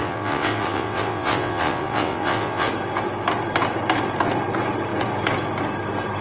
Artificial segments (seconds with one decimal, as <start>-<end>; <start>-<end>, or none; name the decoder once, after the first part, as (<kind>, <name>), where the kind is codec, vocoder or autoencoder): 0.0-2.7 (vocoder, WaveNeXt)